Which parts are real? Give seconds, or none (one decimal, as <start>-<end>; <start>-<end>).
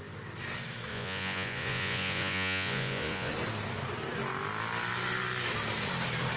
0.0-0.9; 3.3-6.4